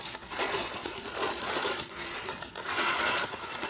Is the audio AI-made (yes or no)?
yes